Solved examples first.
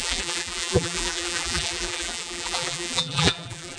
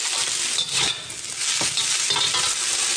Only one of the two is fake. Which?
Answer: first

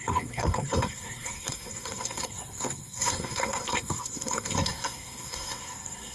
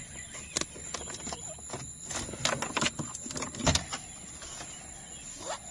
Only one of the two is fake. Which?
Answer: first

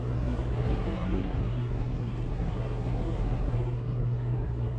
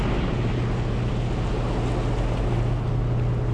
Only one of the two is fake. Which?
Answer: first